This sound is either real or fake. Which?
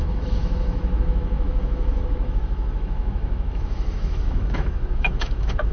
fake